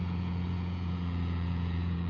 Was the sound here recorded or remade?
remade